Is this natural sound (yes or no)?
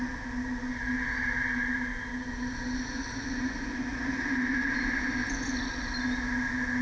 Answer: yes